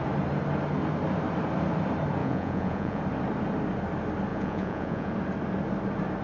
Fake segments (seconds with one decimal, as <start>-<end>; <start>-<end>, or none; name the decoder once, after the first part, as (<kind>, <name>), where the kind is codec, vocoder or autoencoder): 2.2-3.0 (vocoder, Vocos); 4.3-5.1